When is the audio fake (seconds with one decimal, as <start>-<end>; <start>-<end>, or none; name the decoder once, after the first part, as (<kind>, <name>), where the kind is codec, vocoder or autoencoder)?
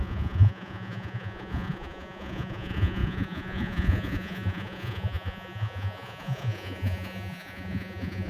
0.0-8.3 (vocoder, Vocos)